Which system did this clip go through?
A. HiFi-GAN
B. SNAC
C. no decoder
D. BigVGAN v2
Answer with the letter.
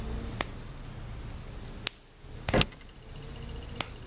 C